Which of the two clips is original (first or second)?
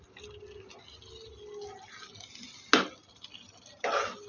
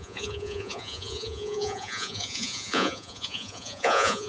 first